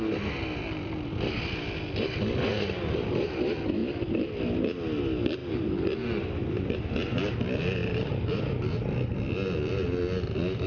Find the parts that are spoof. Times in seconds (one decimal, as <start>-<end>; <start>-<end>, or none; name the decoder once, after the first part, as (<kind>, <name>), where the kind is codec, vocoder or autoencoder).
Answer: none